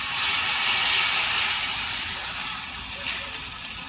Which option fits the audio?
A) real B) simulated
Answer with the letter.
A